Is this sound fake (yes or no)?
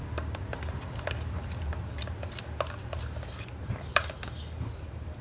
yes